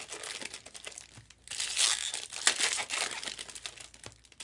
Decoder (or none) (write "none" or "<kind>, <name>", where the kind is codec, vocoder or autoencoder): none